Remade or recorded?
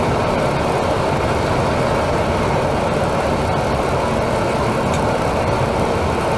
recorded